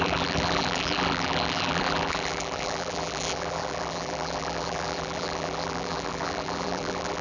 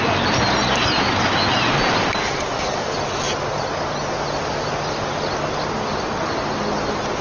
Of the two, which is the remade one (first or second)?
first